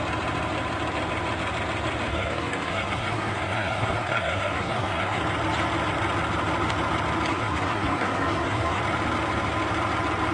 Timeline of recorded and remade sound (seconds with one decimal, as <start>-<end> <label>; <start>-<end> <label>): 0.0-2.1 recorded; 2.1-5.2 remade; 5.2-7.3 recorded; 7.3-8.8 remade; 8.8-10.3 recorded